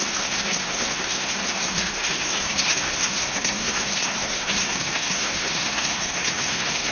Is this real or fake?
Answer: fake